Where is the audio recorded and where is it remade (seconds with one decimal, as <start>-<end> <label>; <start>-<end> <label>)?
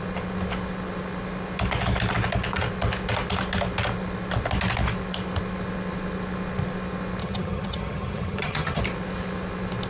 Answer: 0.0-7.2 recorded; 7.2-8.8 remade; 8.8-9.9 recorded